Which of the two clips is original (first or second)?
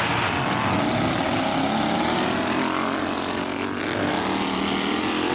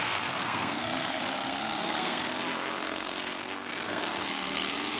first